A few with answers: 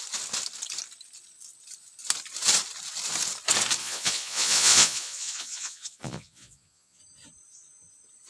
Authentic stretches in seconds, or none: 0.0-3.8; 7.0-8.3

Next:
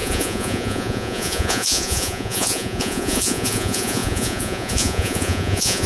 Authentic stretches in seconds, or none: none

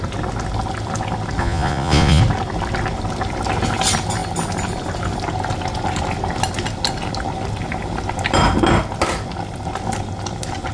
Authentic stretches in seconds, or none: 0.0-1.4; 2.2-10.7

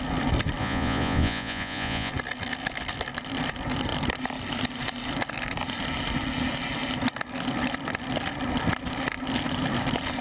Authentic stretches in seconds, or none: 0.0-0.6; 2.1-10.2

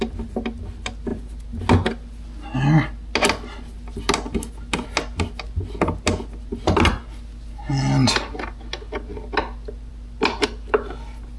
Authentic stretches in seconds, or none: 0.0-11.4

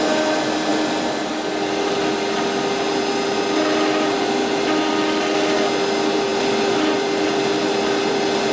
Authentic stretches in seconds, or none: 0.0-8.5

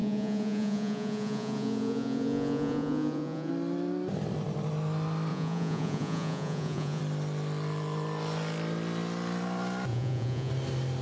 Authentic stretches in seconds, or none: 3.5-5.3; 7.0-9.9; 10.5-11.0

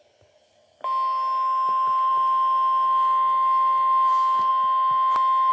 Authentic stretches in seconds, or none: 0.0-5.5